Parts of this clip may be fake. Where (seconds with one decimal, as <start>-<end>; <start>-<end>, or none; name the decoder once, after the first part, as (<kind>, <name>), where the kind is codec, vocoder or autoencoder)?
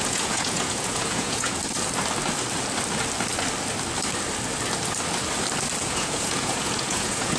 0.0-1.6 (vocoder, Vocos); 5.8-7.4